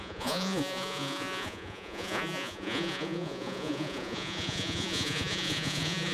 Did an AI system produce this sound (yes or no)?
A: yes